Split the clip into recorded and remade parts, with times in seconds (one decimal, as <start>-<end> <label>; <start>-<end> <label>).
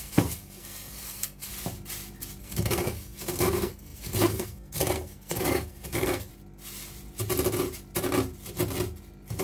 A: 0.0-1.5 remade; 1.5-2.4 recorded; 2.4-6.3 remade; 6.3-9.4 recorded